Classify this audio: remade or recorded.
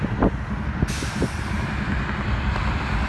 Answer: recorded